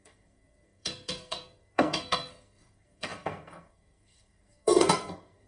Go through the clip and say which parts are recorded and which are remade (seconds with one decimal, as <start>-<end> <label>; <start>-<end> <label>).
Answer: 0.0-5.5 remade